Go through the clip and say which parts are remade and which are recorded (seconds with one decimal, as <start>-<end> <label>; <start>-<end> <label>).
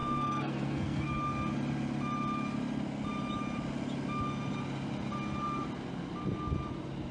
0.0-1.1 remade; 1.1-7.1 recorded